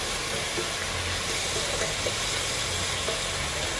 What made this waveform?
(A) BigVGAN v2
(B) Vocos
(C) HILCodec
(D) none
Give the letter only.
D